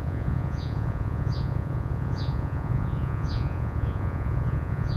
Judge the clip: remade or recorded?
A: remade